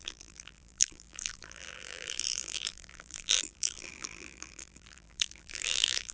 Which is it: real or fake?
fake